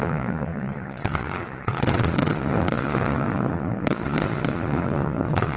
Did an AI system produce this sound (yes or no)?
yes